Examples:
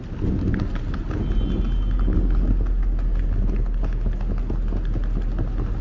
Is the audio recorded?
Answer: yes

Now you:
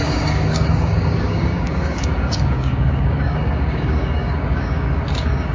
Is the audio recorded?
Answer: no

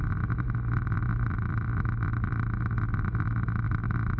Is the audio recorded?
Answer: yes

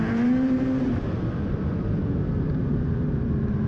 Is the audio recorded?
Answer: no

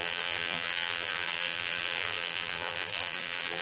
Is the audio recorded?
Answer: no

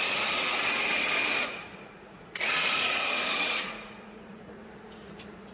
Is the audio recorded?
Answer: no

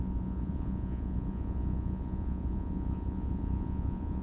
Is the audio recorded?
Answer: no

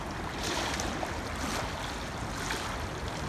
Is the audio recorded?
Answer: yes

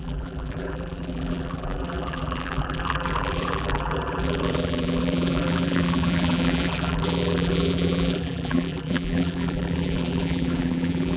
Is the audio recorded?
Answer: no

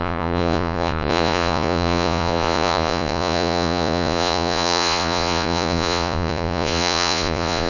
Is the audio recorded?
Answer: no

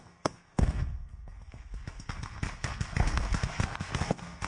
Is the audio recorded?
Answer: no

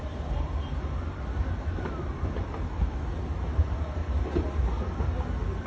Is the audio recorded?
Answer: yes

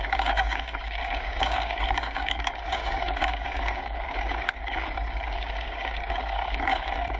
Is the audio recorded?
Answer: no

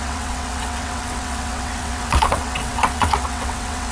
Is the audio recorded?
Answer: no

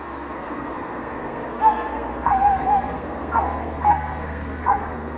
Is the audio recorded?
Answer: no